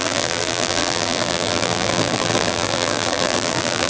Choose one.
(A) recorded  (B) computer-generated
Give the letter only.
B